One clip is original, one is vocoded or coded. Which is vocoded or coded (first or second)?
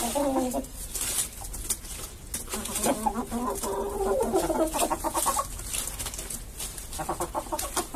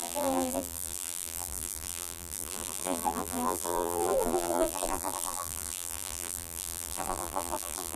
second